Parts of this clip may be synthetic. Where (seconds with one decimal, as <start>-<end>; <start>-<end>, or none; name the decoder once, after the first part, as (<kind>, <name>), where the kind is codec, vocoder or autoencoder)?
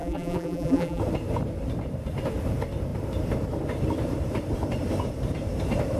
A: 0.0-1.0 (vocoder, BigVGAN v2)